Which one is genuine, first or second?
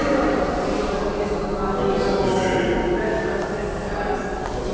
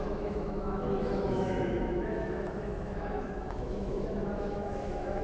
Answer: first